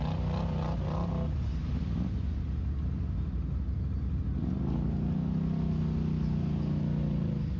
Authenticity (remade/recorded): recorded